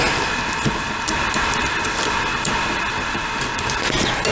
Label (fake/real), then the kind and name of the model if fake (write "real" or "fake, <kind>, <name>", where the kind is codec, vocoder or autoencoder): real